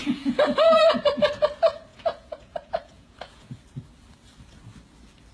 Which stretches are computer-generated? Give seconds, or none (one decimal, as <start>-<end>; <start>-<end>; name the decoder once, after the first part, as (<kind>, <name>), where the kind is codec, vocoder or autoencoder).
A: 0.0-1.0 (vocoder, Vocos); 1.9-3.6